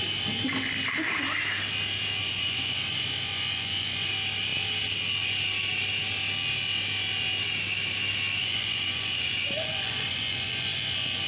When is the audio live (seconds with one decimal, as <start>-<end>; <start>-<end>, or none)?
0.0-2.2; 4.1-8.4